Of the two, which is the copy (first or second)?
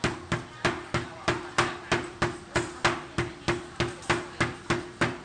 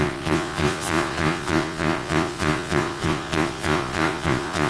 second